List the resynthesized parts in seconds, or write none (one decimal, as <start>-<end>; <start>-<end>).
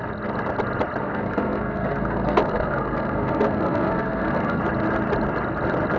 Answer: 1.0-4.6